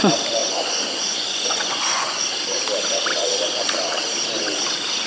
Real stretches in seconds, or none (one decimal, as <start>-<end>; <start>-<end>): 0.0-0.4; 2.2-3.1; 3.7-5.1

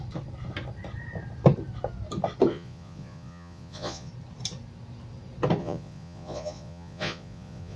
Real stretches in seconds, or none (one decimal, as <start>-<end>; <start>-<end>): 0.0-2.5; 4.1-5.6

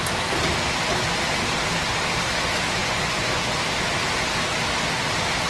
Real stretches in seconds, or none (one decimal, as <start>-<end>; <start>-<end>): 0.0-2.8; 3.6-5.5

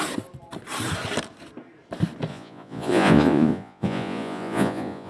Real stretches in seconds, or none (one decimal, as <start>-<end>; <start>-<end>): 0.0-2.3